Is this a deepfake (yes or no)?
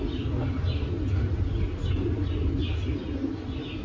no